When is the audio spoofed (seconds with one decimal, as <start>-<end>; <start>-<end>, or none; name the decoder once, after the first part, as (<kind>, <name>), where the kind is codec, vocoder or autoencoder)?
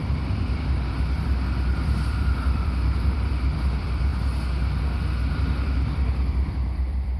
0.0-4.1 (vocoder, BigVGAN v2); 5.3-7.2